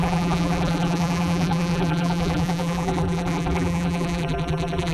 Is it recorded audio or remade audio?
remade